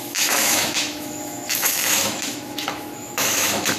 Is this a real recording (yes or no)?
no